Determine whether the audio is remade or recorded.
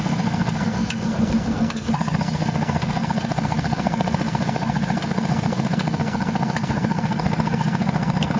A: remade